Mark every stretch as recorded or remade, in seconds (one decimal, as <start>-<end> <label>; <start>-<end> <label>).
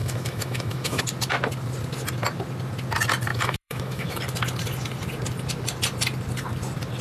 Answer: 0.0-1.0 remade; 1.0-3.3 recorded; 3.3-4.2 remade; 4.2-7.0 recorded